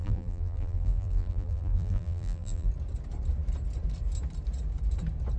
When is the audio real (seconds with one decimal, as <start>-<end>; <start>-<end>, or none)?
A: 2.7-5.4